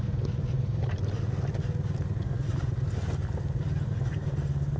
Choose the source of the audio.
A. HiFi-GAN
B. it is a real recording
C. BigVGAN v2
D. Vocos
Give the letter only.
B